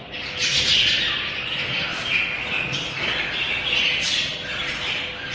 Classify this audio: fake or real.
real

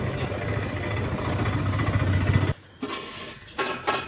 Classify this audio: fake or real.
real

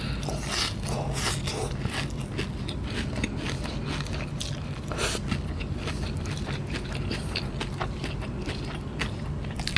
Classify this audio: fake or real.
real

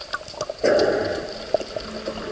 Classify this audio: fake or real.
real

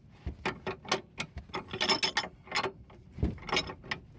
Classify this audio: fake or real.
real